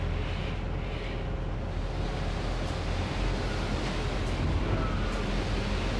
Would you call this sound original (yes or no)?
yes